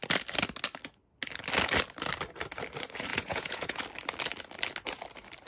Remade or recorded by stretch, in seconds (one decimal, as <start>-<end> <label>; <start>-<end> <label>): 0.0-3.1 recorded; 3.1-3.8 remade; 3.8-5.5 recorded